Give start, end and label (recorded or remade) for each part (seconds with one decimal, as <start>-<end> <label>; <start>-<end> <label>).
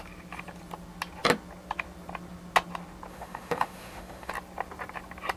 0.0-3.1 recorded; 3.1-4.3 remade; 4.3-5.4 recorded